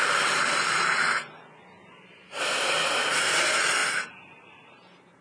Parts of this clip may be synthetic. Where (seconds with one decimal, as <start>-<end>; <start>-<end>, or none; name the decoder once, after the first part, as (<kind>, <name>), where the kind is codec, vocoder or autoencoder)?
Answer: 1.8-3.2 (vocoder, BigVGAN v2); 3.8-5.2